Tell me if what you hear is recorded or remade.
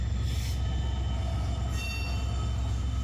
recorded